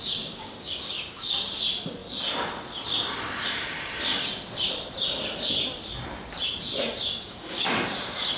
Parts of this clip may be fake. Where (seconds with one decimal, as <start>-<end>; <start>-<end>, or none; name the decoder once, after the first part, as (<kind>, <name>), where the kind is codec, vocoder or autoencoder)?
0.0-1.5 (codec, DAC); 7.1-7.7